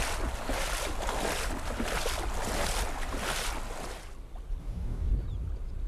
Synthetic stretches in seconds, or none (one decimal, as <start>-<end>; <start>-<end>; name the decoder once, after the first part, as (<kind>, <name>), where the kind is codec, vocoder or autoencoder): 4.6-5.1 (codec, DAC)